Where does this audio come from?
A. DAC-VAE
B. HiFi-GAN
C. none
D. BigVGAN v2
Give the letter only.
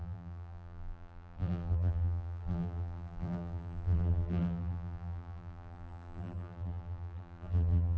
D